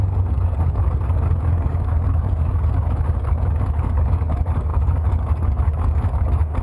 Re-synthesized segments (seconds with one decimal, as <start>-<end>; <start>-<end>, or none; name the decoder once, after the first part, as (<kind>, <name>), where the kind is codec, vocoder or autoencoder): 0.0-6.6 (codec, DAC)